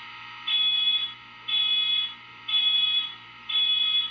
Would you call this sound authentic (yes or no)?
no